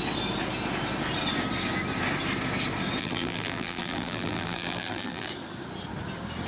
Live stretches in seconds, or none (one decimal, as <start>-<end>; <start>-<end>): 0.0-3.0; 5.3-6.5